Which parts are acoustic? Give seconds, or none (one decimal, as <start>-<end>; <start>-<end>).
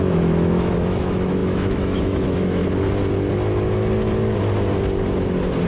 2.6-5.7